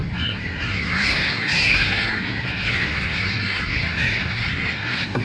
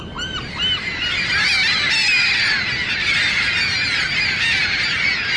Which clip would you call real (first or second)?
second